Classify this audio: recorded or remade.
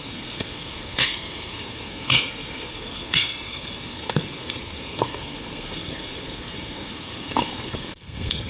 remade